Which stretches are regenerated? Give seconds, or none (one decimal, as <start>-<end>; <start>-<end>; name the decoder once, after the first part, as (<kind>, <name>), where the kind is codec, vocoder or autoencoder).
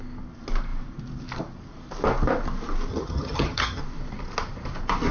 2.9-3.8 (vocoder, HiFi-GAN)